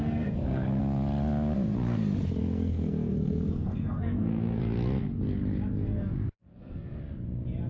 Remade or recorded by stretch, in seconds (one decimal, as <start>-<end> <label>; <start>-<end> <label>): 0.0-0.8 remade; 0.8-2.4 recorded; 2.4-4.6 remade; 4.6-6.5 recorded; 6.5-7.0 remade; 7.0-7.7 recorded